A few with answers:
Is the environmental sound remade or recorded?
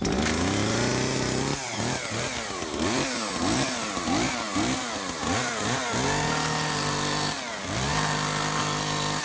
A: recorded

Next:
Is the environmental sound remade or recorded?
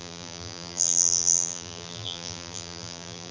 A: remade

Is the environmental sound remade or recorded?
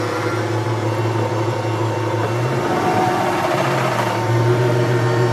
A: remade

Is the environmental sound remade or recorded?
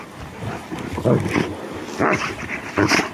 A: recorded